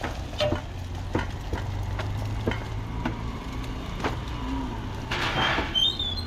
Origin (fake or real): real